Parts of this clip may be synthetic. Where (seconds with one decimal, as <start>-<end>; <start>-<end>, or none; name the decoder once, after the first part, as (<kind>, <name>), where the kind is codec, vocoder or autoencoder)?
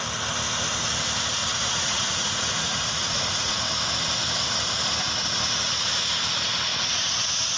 1.4-3.6 (vocoder, Vocos); 6.7-7.6